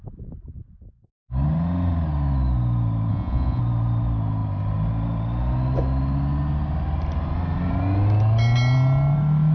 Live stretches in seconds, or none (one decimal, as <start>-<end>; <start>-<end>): 0.0-3.1; 3.6-9.5